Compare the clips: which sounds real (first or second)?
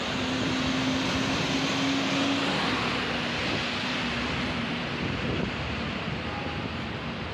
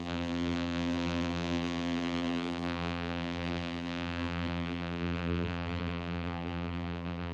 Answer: first